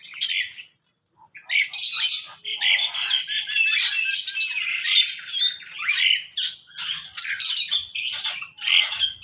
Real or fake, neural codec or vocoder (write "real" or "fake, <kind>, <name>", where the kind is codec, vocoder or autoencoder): real